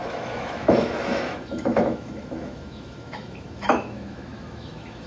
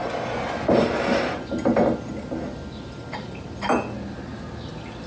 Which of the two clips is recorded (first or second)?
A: second